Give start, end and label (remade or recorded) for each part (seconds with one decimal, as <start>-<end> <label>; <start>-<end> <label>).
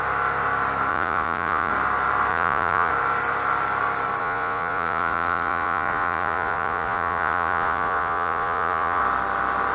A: 0.0-0.9 recorded; 0.9-1.7 remade; 1.7-2.3 recorded; 2.3-2.9 remade; 2.9-4.2 recorded; 4.2-9.0 remade; 9.0-9.7 recorded